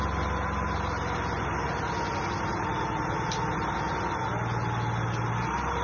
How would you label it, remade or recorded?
recorded